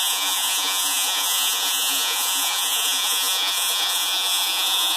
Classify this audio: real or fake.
fake